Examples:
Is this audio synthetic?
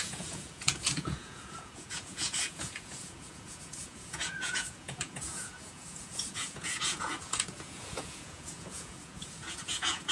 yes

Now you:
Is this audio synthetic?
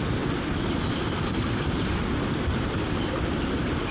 no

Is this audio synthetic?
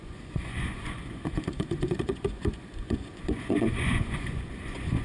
yes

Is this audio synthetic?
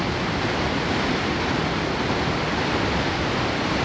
no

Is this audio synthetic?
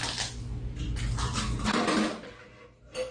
no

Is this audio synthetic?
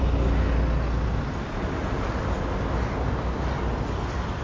no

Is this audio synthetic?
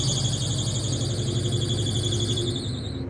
no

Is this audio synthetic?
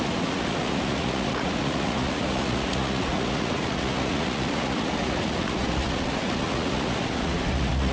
yes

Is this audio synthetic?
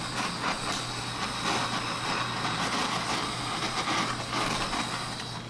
no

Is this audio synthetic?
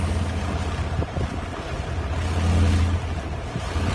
no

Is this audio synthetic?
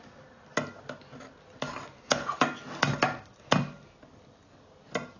no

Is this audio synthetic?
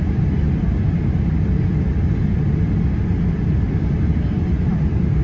no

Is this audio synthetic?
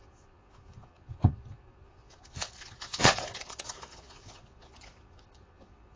yes